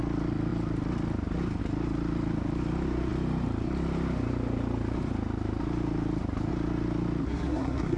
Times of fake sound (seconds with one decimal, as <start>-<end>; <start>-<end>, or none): 7.2-8.0